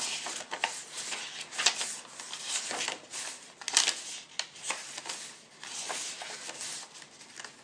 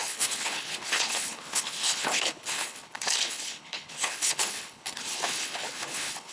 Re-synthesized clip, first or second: second